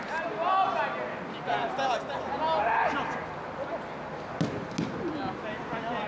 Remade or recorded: recorded